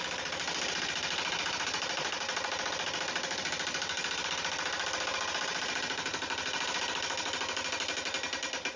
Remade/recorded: recorded